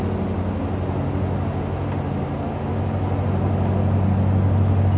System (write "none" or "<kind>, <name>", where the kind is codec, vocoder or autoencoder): none